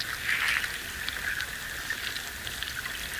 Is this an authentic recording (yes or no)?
yes